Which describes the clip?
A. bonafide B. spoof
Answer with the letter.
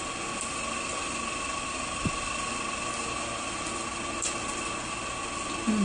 A